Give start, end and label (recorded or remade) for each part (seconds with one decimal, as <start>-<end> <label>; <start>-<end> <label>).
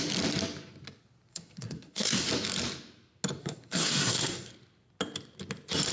0.0-1.3 recorded; 1.3-2.3 remade; 2.3-3.4 recorded; 3.4-4.5 remade; 4.5-5.9 recorded